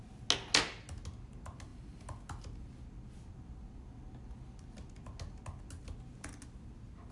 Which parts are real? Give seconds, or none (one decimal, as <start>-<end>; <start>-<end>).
0.0-7.1